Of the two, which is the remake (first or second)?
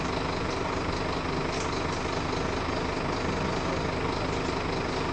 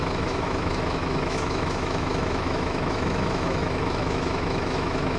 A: second